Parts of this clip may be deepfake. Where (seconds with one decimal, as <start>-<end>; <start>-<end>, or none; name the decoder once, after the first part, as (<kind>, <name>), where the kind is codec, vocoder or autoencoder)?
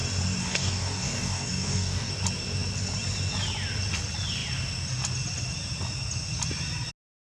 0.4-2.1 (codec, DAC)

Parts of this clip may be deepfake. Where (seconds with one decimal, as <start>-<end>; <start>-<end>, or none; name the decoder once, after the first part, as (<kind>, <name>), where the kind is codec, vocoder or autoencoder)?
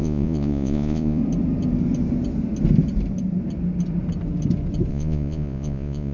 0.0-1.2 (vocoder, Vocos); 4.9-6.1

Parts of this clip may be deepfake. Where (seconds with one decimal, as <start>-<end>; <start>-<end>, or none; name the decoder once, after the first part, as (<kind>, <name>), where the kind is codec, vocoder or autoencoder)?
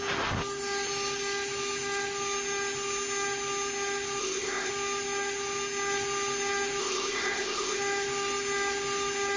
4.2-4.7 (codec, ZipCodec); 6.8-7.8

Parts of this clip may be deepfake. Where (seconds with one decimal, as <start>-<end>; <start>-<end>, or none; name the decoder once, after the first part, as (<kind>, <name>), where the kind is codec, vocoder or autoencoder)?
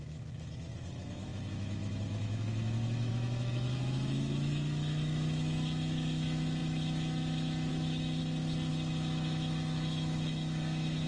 0.0-8.2 (autoencoder, DAC-VAE); 8.7-11.1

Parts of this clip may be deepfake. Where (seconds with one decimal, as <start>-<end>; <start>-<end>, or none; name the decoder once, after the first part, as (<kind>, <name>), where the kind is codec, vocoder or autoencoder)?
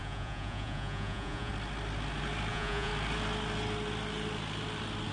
0.0-1.5 (vocoder, Vocos); 2.5-2.9